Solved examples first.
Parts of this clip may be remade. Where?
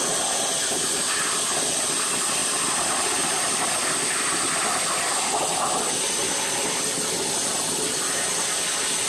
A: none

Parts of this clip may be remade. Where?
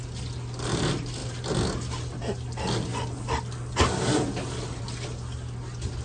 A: none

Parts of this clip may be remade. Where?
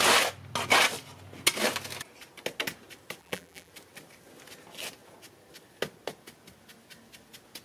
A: 3.2-3.7 (vocoder, BigVGAN v2)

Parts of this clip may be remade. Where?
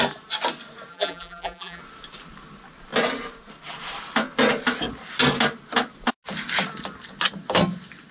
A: 0.9-1.8 (vocoder, BigVGAN v2)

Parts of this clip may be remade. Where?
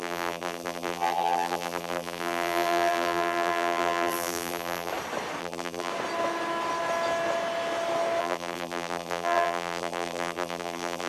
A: 0.0-4.9 (vocoder, BigVGAN v2); 5.4-5.9; 8.2-11.1